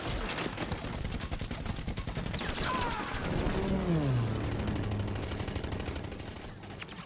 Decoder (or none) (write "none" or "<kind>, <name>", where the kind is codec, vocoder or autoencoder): none